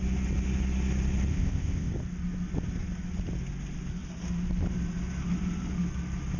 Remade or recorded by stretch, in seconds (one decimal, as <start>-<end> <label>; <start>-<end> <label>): 0.0-1.3 recorded; 1.3-1.9 remade; 1.9-6.4 recorded

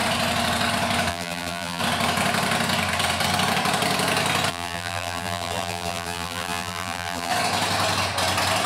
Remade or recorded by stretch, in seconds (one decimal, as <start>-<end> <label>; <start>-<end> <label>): 0.0-1.1 recorded; 1.1-1.8 remade; 1.8-4.5 recorded; 4.5-7.3 remade; 7.3-8.7 recorded